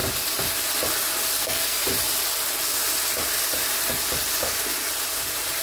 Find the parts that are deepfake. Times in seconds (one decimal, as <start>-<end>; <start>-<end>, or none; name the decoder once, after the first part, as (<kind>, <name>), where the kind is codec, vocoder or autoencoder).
1.4-1.8 (codec, SNAC)